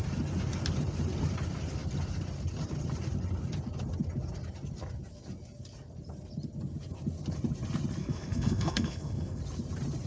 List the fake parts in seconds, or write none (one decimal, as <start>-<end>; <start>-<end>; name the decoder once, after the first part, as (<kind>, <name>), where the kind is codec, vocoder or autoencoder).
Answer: 8.0-9.4 (codec, SNAC)